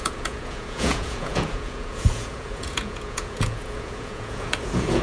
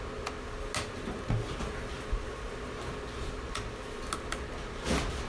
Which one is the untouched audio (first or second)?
second